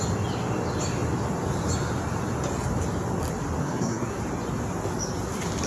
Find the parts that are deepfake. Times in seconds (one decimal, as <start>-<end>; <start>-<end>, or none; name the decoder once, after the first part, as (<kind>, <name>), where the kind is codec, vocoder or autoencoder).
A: 3.6-4.2 (codec, SNAC)